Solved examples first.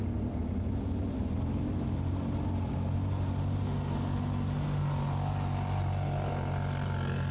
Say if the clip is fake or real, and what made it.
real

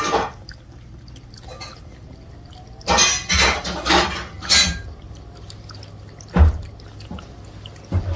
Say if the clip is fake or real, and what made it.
real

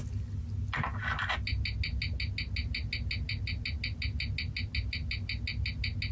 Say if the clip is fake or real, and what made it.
real